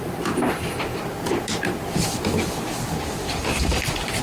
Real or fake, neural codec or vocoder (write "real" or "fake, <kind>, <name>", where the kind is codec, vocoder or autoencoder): real